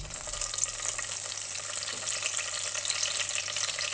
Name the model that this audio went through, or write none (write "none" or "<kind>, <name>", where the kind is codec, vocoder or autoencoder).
none